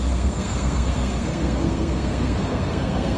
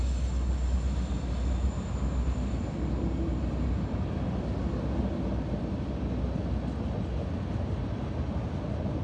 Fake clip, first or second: first